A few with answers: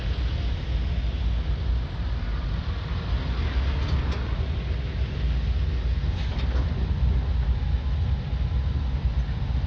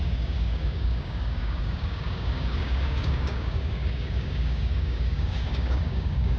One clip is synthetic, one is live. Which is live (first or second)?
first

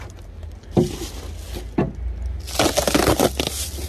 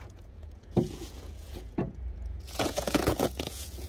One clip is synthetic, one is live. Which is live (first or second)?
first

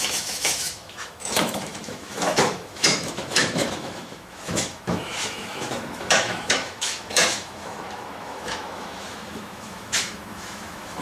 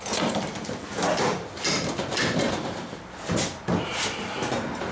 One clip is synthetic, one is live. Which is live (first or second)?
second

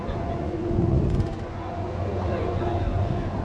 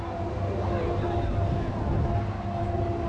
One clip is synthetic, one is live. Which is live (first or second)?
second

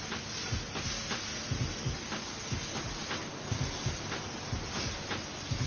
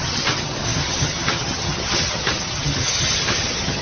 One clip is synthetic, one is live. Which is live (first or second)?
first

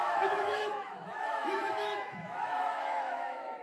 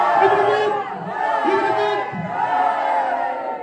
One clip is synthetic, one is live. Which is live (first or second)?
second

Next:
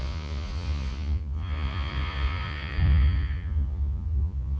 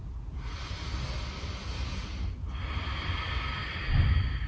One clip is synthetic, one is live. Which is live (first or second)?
second